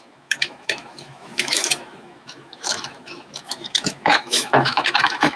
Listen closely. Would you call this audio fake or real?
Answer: fake